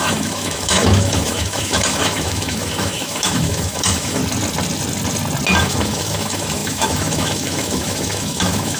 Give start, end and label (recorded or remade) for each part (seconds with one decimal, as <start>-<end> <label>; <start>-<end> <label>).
0.0-4.2 remade; 4.2-5.6 recorded; 5.6-8.8 remade